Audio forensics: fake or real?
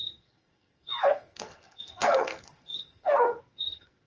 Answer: fake